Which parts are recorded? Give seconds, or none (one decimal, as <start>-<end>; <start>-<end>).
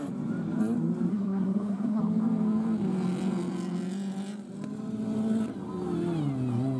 0.0-1.1; 2.0-6.8